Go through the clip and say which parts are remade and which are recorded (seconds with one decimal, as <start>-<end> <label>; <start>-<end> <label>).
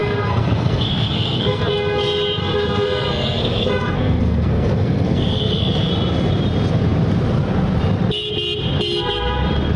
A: 0.0-1.6 remade; 1.6-2.4 recorded; 2.4-5.9 remade; 5.9-9.8 recorded